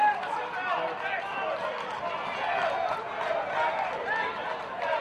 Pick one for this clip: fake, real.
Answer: real